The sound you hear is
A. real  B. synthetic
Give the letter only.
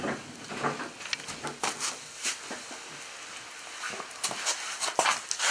A